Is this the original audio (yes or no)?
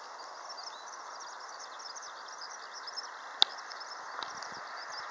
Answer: yes